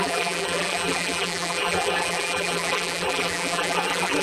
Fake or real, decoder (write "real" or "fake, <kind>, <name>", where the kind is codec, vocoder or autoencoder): fake, vocoder, BigVGAN v2